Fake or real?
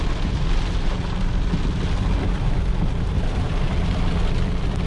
fake